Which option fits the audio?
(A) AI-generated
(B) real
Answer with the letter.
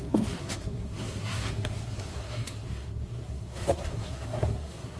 A